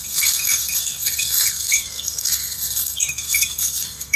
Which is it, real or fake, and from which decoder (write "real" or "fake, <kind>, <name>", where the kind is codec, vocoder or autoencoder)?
fake, codec, SNAC